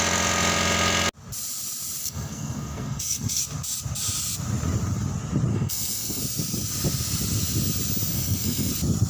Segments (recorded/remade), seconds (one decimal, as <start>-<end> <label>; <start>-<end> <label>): 0.0-2.0 recorded; 2.0-3.4 remade; 3.4-5.5 recorded; 5.5-6.2 remade; 6.2-8.1 recorded; 8.1-8.7 remade; 8.7-9.1 recorded

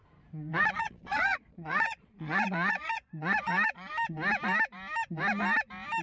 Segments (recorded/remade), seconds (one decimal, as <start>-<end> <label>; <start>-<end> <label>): 0.0-0.5 recorded; 0.5-3.9 remade; 3.9-6.0 recorded

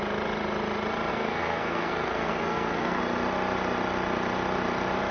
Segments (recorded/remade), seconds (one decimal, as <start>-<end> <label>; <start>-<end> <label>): 0.0-1.1 recorded; 1.1-3.0 remade; 3.0-5.1 recorded

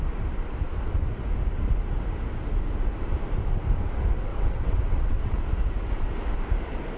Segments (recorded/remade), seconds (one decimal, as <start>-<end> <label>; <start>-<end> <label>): 0.0-4.3 recorded; 4.3-5.4 remade; 5.4-7.0 recorded

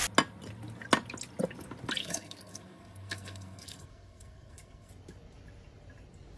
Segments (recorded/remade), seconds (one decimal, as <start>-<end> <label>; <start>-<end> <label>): 0.0-2.0 recorded; 2.0-4.9 remade; 4.9-6.4 recorded

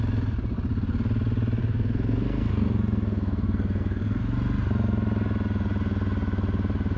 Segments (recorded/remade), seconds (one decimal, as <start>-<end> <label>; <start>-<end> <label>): 0.0-1.6 recorded; 1.6-4.2 remade; 4.2-7.0 recorded